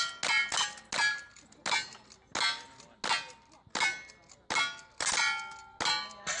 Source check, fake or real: real